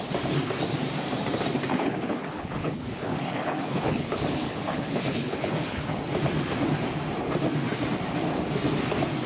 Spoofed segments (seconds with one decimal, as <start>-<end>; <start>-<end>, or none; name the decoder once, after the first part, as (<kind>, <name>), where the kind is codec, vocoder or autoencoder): 1.7-6.0 (codec, HILCodec)